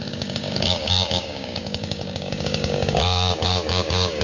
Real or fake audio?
fake